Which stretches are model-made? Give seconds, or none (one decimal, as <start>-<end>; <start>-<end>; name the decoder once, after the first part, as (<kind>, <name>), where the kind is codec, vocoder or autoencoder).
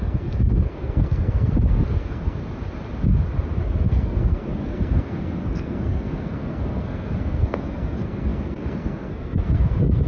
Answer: 0.0-2.4 (codec, SNAC); 3.6-10.1